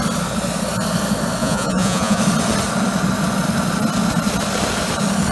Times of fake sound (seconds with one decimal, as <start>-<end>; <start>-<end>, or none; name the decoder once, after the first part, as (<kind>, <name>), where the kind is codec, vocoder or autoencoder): 1.4-2.2 (vocoder, Vocos)